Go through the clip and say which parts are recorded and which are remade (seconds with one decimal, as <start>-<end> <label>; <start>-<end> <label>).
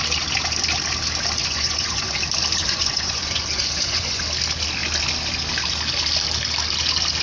0.0-1.4 recorded; 1.4-2.2 remade; 2.2-2.6 recorded; 2.6-4.2 remade; 4.2-7.2 recorded